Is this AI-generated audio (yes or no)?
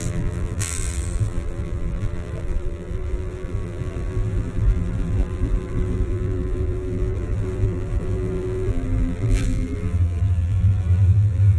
yes